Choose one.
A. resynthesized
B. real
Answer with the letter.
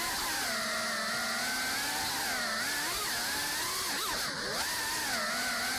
B